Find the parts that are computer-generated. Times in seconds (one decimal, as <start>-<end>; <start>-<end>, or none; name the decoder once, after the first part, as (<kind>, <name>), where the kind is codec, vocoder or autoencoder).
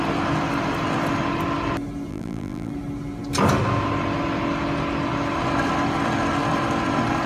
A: 2.1-2.7 (vocoder, BigVGAN v2)